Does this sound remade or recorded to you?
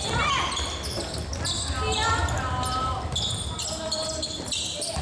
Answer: recorded